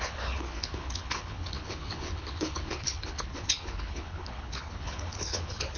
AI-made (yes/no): yes